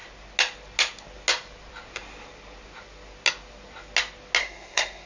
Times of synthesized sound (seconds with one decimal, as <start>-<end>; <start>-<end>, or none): 4.4-5.1